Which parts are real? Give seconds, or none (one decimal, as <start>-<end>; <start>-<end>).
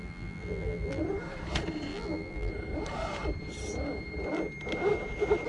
1.0-1.9; 2.5-5.5